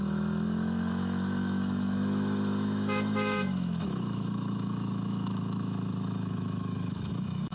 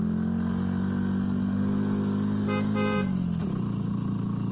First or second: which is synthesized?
first